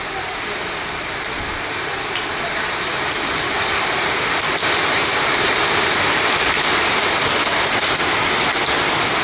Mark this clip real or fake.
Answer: fake